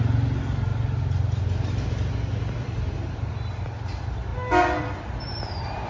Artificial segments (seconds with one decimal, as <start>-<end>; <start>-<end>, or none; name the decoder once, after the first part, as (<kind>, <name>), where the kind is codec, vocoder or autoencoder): none